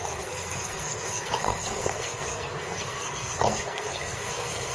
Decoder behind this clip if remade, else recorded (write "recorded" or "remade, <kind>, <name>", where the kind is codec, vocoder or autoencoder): remade, codec, SNAC